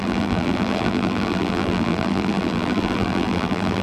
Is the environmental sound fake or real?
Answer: fake